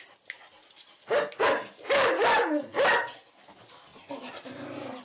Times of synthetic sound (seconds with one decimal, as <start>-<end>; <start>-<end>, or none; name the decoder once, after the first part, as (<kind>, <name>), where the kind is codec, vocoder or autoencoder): none